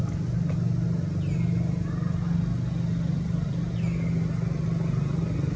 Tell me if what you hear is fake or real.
real